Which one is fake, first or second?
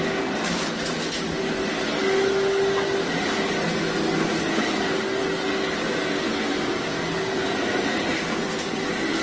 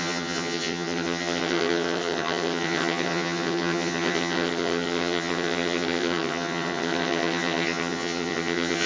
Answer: second